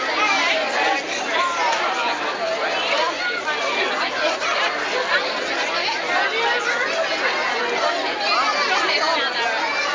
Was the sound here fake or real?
real